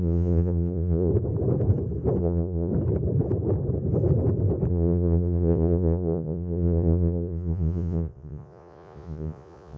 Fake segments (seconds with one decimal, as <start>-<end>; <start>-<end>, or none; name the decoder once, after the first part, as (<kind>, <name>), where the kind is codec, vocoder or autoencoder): 0.0-1.1 (vocoder, Vocos); 2.2-2.7; 4.7-9.8